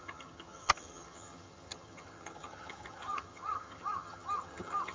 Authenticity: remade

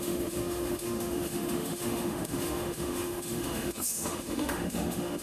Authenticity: remade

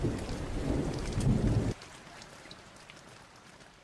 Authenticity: remade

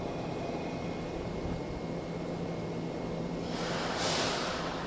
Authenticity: recorded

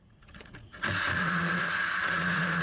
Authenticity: remade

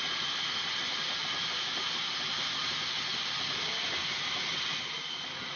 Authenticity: recorded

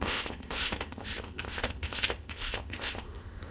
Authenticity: remade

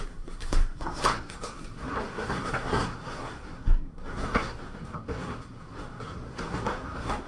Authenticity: remade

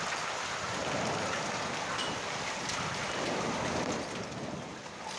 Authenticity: recorded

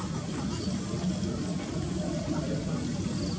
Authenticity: recorded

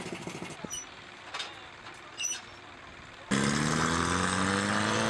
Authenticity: recorded